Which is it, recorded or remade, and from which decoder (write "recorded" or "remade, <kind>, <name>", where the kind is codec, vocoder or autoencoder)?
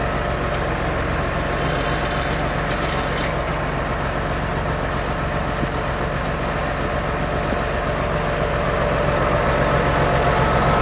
recorded